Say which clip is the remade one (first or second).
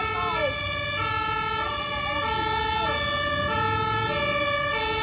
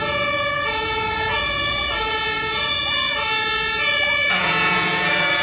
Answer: second